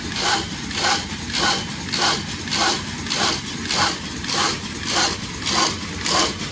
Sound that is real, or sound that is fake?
fake